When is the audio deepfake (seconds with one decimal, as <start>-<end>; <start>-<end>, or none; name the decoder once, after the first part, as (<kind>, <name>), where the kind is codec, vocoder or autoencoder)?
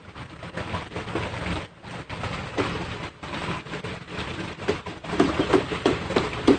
none